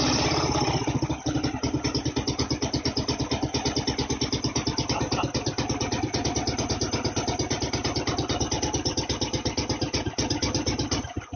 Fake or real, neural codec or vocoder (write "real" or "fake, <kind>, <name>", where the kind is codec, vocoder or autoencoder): real